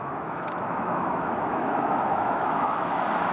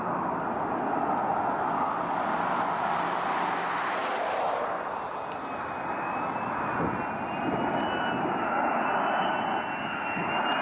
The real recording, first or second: second